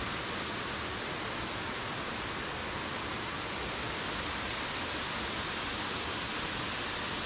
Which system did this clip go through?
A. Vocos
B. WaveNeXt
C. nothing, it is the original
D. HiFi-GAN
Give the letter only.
C